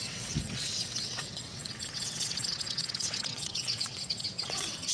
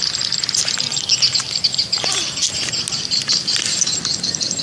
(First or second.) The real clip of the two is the second